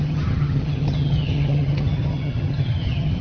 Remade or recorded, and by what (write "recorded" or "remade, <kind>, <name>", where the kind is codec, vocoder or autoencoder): remade, vocoder, HiFi-GAN